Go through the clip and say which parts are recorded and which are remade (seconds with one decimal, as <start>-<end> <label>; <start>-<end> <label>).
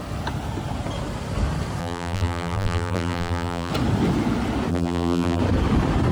0.0-1.8 recorded; 1.8-3.7 remade; 3.7-4.7 recorded; 4.7-5.4 remade; 5.4-6.1 recorded